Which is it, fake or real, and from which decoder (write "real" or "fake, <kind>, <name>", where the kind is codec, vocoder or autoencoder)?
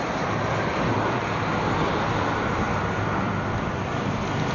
real